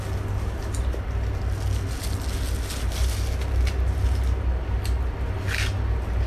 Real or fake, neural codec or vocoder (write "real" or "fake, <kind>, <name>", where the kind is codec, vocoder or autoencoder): real